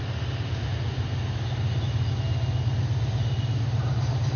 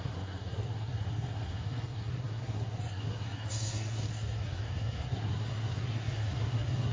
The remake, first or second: second